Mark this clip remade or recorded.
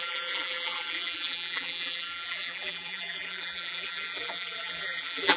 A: remade